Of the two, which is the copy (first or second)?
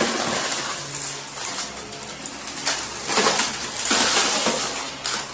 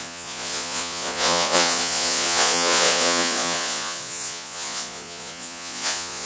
second